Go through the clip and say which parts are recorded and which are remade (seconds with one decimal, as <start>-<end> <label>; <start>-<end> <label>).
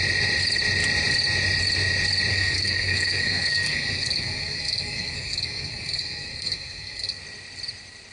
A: 0.0-2.3 recorded; 2.3-7.2 remade; 7.2-8.1 recorded